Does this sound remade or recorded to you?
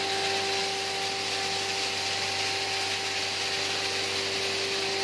recorded